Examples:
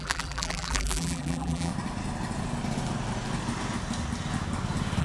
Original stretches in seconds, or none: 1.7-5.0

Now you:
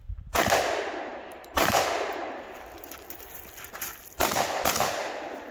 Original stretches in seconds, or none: 0.0-1.1; 2.5-5.5